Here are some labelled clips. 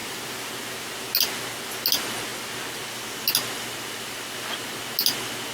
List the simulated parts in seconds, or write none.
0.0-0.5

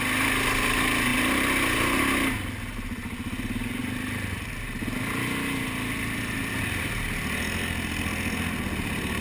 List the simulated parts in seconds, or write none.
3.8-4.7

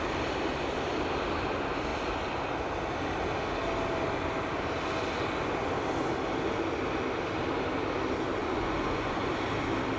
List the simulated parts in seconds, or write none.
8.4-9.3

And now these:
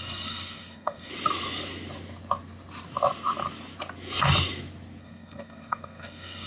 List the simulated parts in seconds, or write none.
0.0-1.1; 5.0-6.5

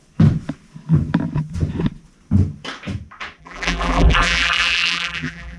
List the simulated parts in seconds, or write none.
3.4-5.6